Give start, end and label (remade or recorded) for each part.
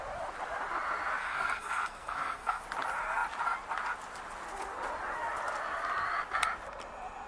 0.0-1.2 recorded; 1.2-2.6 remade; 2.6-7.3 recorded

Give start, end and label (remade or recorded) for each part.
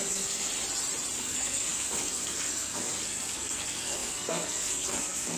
0.0-0.5 remade; 0.5-1.2 recorded; 1.2-5.4 remade